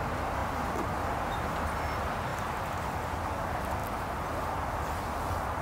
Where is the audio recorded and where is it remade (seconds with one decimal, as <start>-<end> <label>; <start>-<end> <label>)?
0.0-5.6 recorded